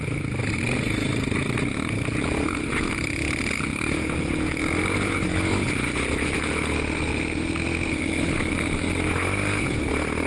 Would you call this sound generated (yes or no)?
no